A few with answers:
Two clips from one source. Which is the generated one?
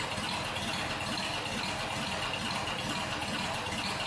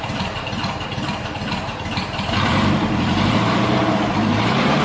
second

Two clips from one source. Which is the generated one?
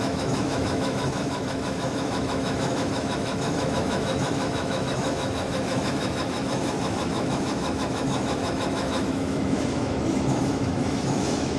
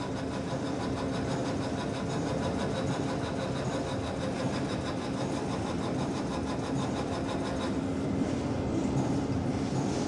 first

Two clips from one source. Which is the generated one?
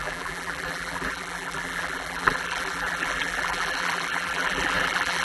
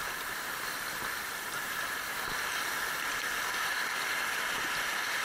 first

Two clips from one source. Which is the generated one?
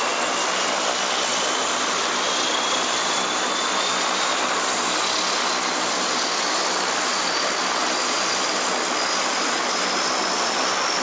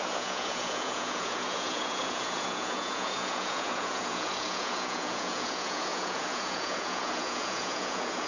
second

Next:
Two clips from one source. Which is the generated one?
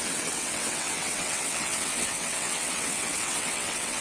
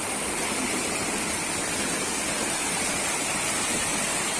first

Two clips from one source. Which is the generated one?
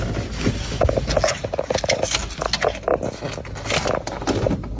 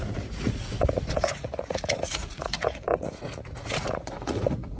second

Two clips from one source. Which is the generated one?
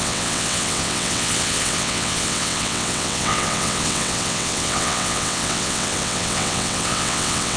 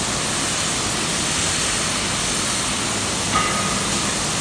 first